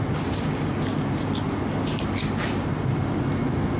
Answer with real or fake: real